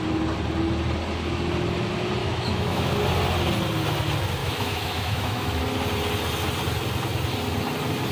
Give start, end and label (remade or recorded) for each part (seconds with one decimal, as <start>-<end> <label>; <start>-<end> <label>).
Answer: 0.0-2.2 recorded; 2.2-3.0 remade; 3.0-4.4 recorded; 4.4-5.6 remade; 5.6-8.1 recorded